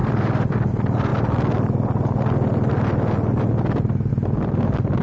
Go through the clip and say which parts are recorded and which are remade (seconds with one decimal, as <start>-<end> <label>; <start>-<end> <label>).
0.0-0.7 remade; 0.7-5.0 recorded